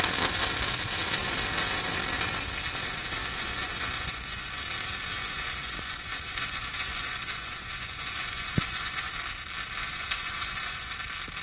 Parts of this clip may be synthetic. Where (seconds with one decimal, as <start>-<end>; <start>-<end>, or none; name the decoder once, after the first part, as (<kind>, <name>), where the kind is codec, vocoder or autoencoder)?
3.2-4.6 (vocoder, Vocos); 5.2-9.1; 9.8-10.9